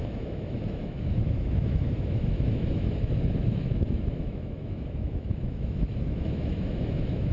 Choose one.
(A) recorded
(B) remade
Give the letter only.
B